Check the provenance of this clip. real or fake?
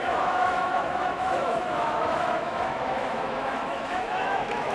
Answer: fake